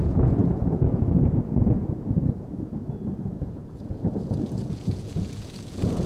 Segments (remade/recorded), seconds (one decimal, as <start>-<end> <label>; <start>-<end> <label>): 0.0-6.1 remade